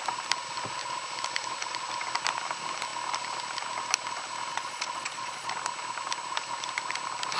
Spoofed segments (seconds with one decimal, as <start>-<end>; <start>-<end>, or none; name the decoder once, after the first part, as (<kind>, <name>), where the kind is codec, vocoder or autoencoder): 4.5-5.5 (vocoder, Vocos)